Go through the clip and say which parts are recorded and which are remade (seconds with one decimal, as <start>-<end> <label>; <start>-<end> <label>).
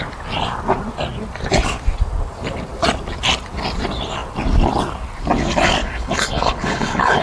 0.0-5.8 recorded; 5.8-7.2 remade